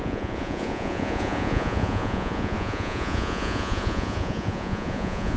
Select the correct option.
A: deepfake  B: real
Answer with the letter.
A